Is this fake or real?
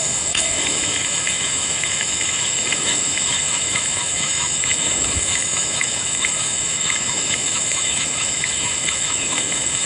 fake